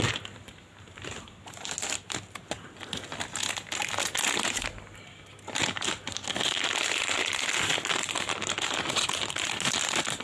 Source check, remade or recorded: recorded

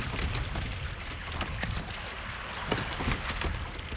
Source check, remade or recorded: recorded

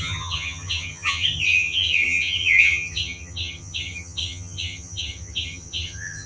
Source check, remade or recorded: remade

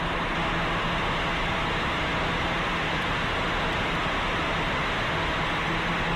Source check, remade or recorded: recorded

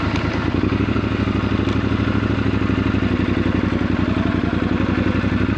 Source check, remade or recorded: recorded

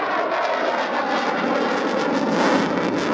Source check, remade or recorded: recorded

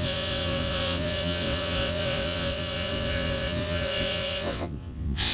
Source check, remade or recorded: remade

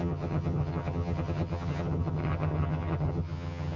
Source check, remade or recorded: remade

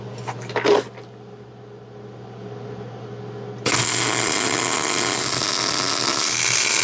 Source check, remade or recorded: recorded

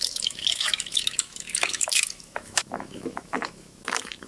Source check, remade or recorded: remade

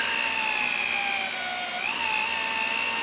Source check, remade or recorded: recorded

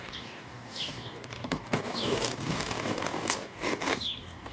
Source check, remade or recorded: remade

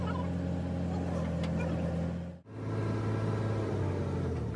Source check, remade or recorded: recorded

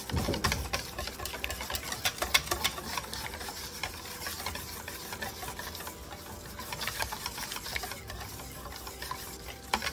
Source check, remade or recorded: recorded